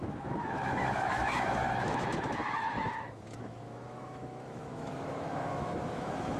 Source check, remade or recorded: remade